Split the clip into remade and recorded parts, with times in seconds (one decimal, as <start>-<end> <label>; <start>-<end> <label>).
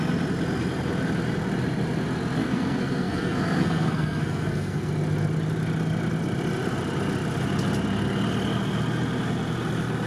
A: 0.0-2.4 recorded; 2.4-4.9 remade; 4.9-10.1 recorded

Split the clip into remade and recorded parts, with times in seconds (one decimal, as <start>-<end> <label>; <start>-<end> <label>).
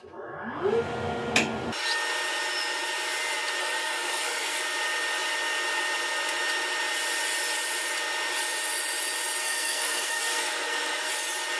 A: 0.0-3.6 recorded; 3.6-4.6 remade; 4.6-9.4 recorded; 9.4-11.1 remade; 11.1-11.6 recorded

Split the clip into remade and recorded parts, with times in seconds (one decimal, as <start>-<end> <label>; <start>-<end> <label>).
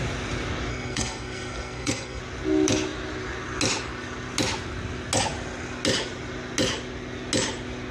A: 0.0-0.7 recorded; 0.7-2.2 remade; 2.2-7.9 recorded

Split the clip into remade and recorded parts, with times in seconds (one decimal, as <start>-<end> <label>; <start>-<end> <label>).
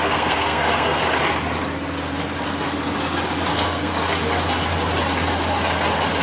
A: 0.0-1.0 remade; 1.0-3.5 recorded; 3.5-3.9 remade; 3.9-6.2 recorded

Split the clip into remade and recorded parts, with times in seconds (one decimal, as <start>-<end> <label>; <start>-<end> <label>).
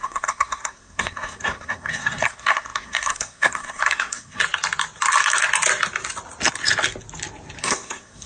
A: 0.0-4.4 remade; 4.4-7.6 recorded; 7.6-8.3 remade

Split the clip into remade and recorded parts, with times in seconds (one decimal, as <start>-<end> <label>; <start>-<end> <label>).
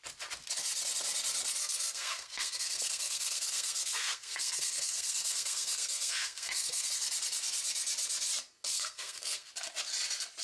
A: 0.0-1.6 recorded; 1.6-6.9 remade; 6.9-8.7 recorded; 8.7-9.5 remade; 9.5-10.4 recorded